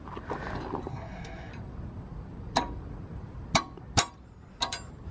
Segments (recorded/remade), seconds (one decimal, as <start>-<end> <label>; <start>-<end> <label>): 0.0-0.9 recorded; 0.9-1.5 remade; 1.5-5.1 recorded